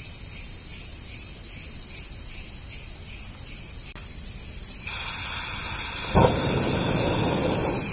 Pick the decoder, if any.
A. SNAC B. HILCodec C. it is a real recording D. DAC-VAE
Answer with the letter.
C